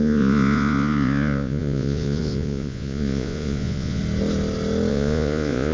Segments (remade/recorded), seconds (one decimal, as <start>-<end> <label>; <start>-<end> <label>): 0.0-4.0 remade; 4.0-4.9 recorded; 4.9-5.7 remade